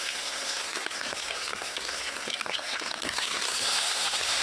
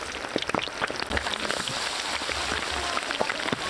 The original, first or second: second